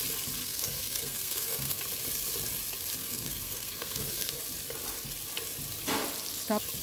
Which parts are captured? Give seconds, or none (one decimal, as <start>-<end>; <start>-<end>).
0.0-0.4; 1.8-3.0; 4.3-6.8